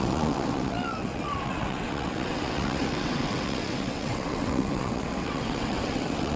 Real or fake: fake